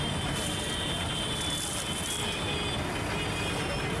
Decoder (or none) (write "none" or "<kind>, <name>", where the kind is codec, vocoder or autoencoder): none